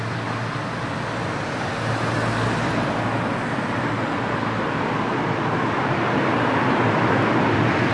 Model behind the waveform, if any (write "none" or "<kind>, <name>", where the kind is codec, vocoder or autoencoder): none